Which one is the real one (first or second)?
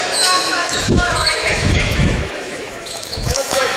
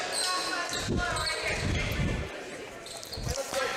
second